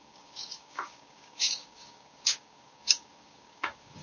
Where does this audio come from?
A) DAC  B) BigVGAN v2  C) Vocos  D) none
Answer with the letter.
A